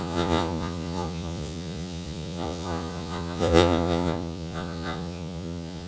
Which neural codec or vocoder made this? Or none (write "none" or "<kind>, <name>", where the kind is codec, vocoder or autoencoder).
vocoder, Vocos